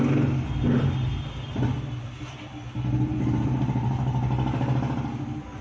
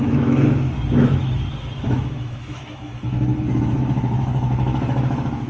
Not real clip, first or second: second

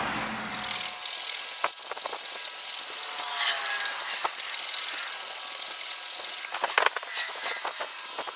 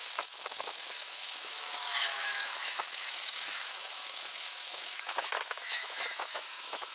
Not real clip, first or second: second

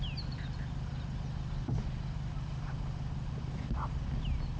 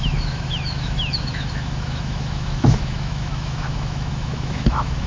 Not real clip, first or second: second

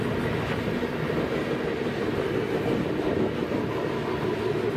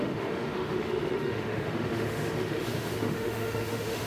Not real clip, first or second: second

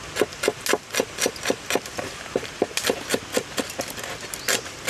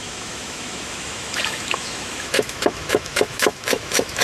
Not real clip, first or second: second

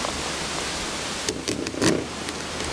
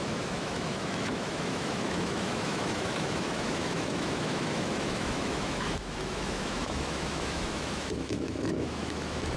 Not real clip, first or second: second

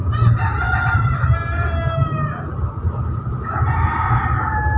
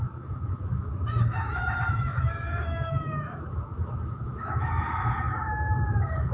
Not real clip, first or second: second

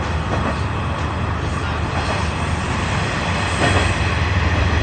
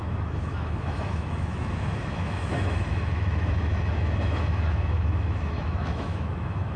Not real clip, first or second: second